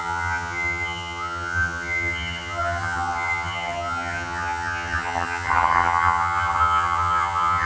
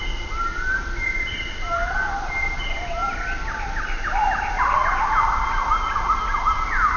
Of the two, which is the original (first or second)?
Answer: second